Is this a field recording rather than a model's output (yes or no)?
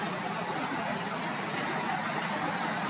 yes